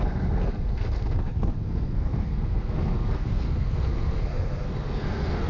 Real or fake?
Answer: fake